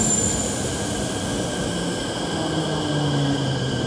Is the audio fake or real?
real